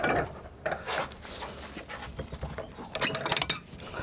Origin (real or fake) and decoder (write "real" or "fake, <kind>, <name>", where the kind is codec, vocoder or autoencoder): real